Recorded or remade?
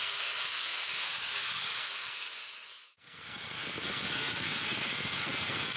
remade